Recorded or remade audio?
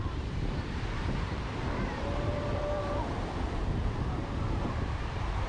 remade